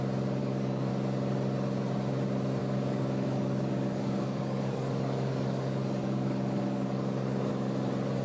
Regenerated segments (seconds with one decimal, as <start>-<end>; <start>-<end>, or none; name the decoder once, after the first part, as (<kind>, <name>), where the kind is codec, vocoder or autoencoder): 0.4-0.9 (codec, DAC); 2.6-7.5